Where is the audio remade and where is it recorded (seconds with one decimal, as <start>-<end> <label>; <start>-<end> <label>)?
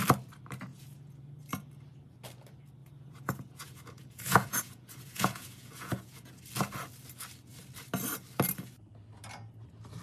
0.0-0.7 recorded; 0.7-1.4 remade; 1.4-2.8 recorded; 2.8-6.4 remade; 6.4-10.0 recorded